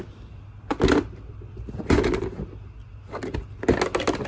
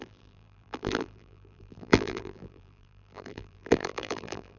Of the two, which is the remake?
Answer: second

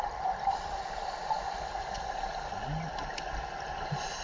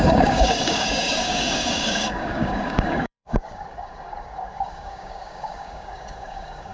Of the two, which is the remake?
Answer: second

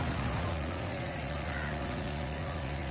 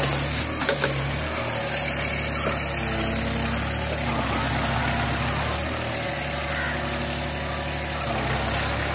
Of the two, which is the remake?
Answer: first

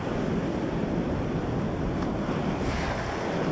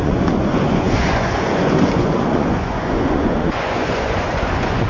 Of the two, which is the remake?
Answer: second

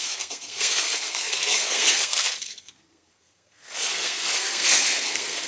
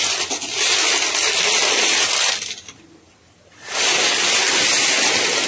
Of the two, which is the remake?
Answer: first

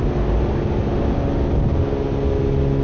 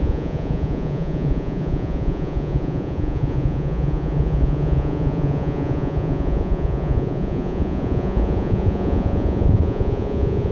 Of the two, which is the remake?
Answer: second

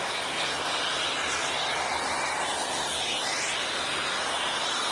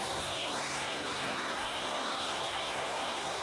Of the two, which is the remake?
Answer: second